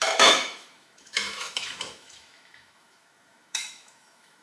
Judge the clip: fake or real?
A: fake